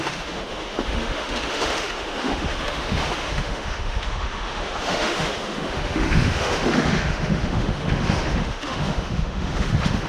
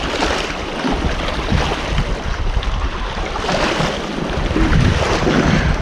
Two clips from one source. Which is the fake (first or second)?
first